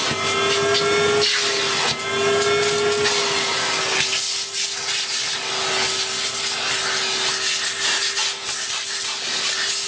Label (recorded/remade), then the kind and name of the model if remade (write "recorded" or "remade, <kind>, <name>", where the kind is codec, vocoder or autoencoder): recorded